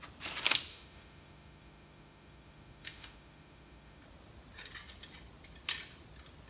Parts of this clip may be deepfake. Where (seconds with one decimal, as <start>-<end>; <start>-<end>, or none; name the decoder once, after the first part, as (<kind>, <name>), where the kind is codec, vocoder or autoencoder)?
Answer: 0.7-4.0 (autoencoder, DAC-VAE)